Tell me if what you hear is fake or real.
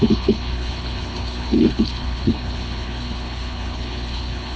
fake